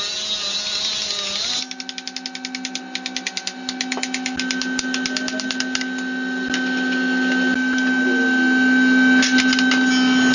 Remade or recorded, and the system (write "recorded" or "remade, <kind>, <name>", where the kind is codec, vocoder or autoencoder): recorded